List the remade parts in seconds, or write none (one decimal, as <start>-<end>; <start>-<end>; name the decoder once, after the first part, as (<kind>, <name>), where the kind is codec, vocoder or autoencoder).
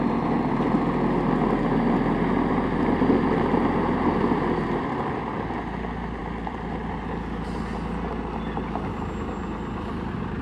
none